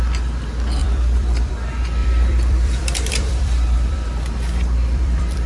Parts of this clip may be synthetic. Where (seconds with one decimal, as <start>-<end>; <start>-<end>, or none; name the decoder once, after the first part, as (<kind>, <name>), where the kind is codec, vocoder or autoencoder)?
0.8-1.5 (vocoder, BigVGAN v2); 2.0-5.5